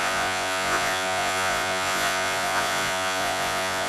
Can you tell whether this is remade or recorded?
remade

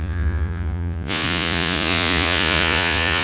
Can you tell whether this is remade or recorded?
remade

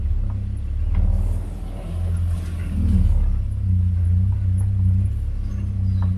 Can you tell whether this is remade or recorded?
recorded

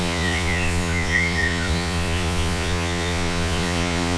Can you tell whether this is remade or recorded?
remade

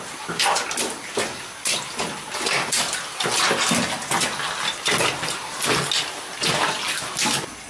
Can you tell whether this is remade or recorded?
recorded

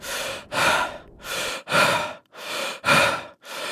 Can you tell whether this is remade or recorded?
recorded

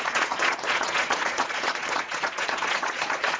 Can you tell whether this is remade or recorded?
remade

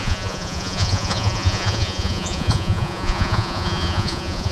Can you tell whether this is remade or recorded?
remade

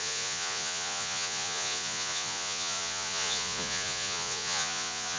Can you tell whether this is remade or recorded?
remade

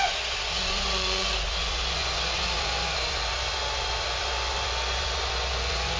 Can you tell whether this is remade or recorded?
remade